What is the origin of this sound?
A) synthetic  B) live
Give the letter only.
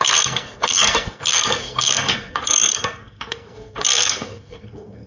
A